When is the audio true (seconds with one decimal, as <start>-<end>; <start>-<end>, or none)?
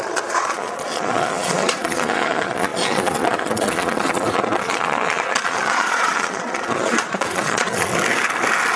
7.9-8.8